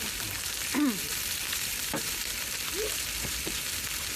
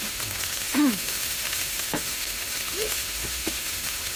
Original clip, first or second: first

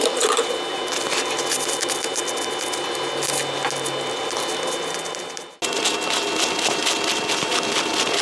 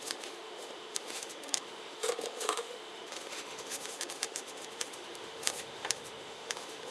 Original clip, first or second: first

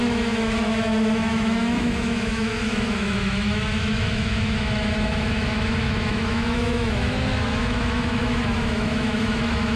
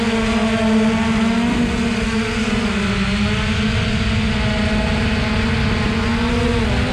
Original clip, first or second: second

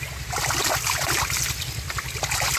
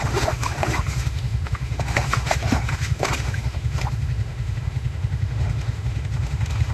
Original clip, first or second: first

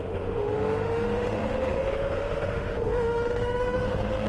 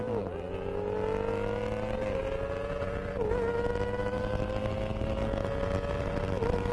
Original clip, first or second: second